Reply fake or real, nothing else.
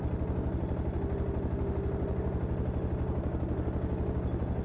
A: real